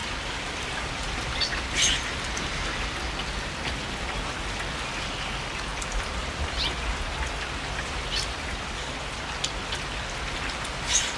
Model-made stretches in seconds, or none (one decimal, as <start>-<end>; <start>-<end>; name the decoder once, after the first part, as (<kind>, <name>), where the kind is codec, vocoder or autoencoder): 0.0-1.4 (vocoder, BigVGAN v2); 5.7-6.6